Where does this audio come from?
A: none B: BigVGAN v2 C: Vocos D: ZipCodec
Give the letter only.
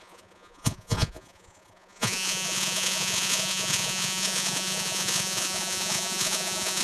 C